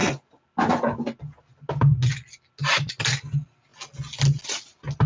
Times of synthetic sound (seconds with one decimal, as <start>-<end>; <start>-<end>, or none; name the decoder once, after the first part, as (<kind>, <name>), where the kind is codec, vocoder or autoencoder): none